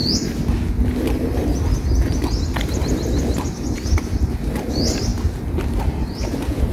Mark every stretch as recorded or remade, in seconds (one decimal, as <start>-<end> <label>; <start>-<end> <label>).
0.0-6.7 recorded